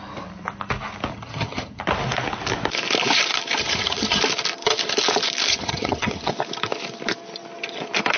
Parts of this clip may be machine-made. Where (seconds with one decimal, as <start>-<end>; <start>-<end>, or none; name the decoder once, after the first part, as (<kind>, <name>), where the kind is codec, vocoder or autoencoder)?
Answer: 1.1-1.8 (vocoder, HiFi-GAN); 3.6-4.2; 5.5-6.3